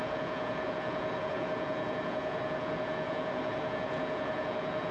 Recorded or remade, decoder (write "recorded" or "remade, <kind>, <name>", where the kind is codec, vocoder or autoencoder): remade, vocoder, Vocos